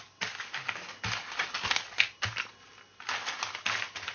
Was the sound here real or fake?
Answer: real